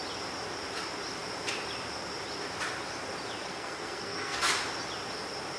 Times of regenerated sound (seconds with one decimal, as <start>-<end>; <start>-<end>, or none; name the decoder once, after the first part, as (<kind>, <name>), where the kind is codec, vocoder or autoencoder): 3.5-4.5 (codec, SNAC)